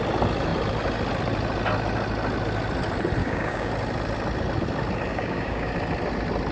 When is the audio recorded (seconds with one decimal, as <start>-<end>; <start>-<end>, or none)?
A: 0.0-3.2; 3.7-5.1; 5.7-6.5